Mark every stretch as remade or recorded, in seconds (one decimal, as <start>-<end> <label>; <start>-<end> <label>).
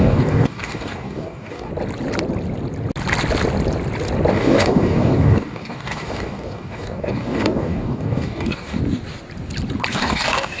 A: 0.0-1.7 remade; 1.7-4.3 recorded; 4.3-8.8 remade; 8.8-9.9 recorded; 9.9-10.6 remade